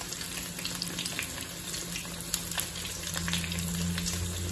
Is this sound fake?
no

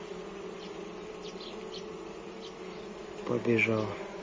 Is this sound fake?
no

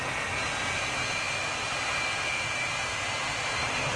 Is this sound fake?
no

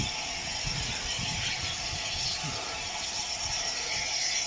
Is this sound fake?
no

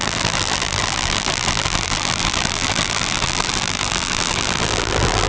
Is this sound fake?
yes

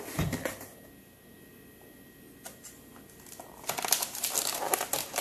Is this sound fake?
no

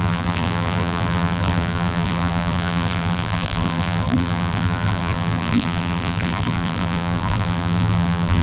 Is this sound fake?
yes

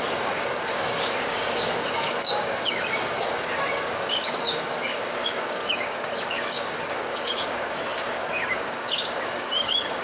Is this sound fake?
yes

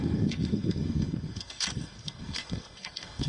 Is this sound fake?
yes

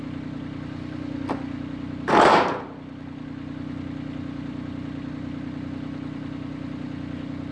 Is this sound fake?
no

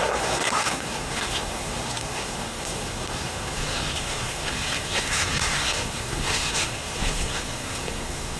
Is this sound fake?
yes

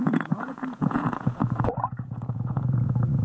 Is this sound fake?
yes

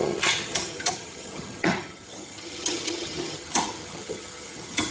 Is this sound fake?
yes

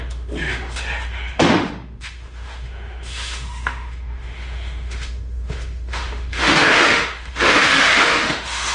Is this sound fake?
yes